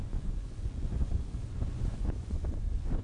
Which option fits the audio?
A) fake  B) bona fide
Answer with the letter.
A